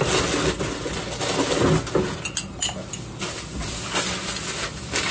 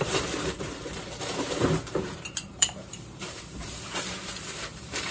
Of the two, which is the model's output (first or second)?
second